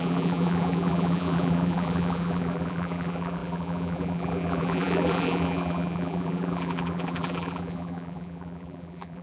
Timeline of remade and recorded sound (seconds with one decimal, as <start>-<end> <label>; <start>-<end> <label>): 0.0-9.2 remade